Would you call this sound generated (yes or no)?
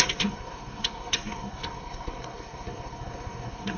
yes